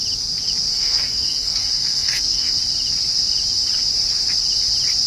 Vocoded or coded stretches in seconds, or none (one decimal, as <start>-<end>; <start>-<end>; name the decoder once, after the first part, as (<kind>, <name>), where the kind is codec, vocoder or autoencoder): 0.7-2.6 (codec, SNAC)